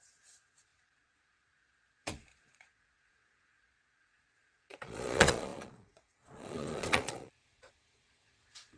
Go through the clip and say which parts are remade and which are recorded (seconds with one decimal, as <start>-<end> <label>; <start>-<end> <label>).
0.0-8.8 remade

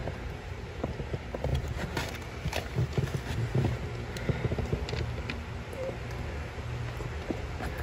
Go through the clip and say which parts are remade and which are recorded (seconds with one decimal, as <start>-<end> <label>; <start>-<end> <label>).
0.0-0.9 remade; 0.9-7.8 recorded

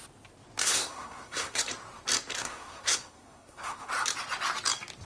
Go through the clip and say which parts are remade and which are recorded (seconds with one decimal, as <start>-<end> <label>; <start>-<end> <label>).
0.0-0.6 recorded; 0.6-1.6 remade; 1.6-2.4 recorded; 2.4-3.9 remade; 3.9-5.0 recorded

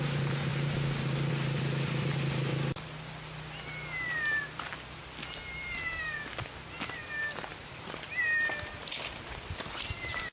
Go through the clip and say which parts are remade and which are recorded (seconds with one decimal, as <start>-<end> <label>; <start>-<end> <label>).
0.0-10.3 recorded

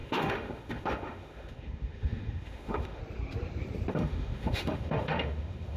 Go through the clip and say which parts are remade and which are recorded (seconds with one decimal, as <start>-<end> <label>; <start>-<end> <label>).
0.0-3.0 remade; 3.0-3.9 recorded; 3.9-5.8 remade

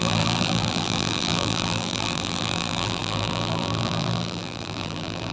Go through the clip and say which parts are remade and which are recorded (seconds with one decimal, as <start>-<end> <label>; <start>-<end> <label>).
0.0-5.3 remade

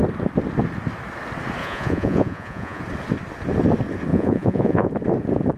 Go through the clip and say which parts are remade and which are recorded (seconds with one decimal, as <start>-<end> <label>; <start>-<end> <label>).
0.0-1.6 recorded; 1.6-2.8 remade; 2.8-4.1 recorded; 4.1-4.9 remade; 4.9-5.6 recorded